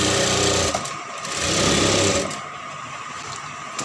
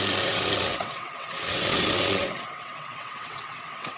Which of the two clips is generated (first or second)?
second